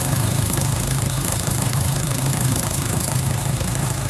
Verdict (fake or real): fake